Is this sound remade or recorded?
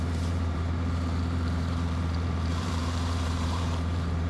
remade